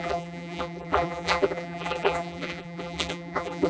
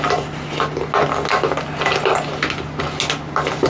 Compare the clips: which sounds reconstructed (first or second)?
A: first